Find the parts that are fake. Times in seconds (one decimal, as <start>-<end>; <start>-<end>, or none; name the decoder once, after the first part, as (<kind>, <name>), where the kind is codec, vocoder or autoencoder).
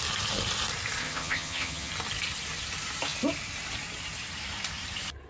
1.0-1.9 (vocoder, HiFi-GAN)